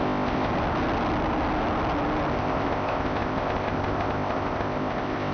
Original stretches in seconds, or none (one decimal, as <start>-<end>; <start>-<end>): 0.5-2.3